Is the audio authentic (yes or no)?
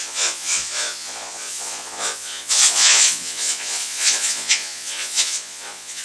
no